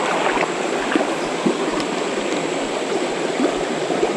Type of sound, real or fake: real